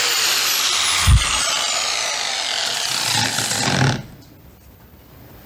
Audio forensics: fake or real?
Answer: real